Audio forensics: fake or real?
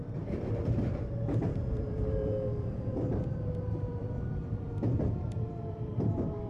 fake